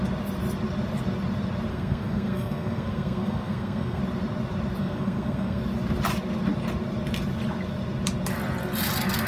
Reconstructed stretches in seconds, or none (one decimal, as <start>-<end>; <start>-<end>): 1.7-4.0; 4.8-5.6

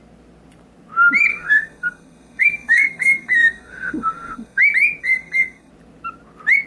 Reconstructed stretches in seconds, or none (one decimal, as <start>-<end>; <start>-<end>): 1.3-4.6; 5.0-5.7

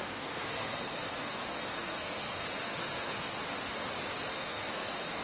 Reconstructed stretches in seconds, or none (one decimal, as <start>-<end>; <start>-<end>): 0.0-3.4; 4.3-5.2

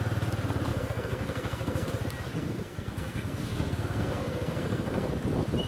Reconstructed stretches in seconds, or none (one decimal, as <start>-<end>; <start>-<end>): 0.7-1.9; 2.3-5.1

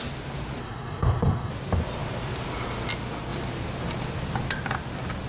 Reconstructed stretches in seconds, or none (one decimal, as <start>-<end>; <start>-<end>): 0.6-1.5

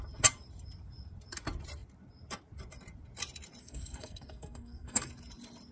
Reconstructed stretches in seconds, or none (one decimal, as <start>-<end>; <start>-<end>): 3.6-5.1